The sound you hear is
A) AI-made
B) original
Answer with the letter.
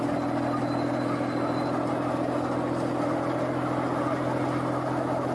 B